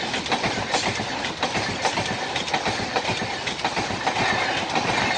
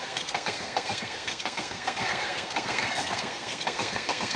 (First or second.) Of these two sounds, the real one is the first